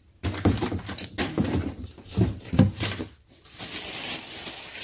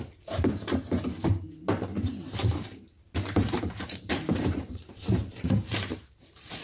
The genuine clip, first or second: first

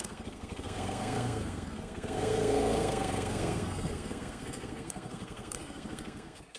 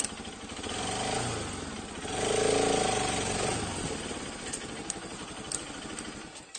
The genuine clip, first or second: second